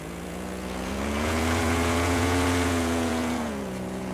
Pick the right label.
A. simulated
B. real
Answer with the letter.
A